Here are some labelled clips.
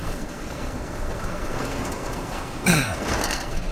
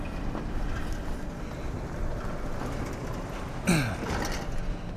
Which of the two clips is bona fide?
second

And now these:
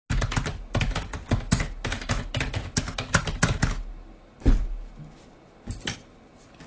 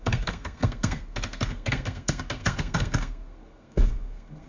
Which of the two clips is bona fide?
first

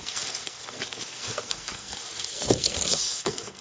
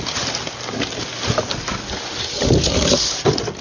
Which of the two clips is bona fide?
second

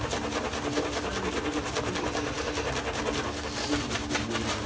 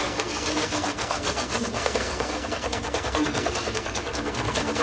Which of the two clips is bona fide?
first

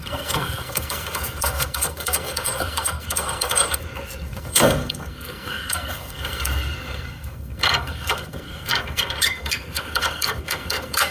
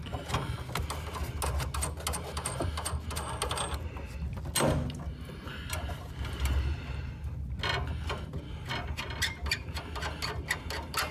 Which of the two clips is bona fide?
second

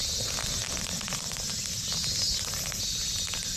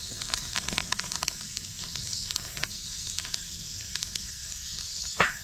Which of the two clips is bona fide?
first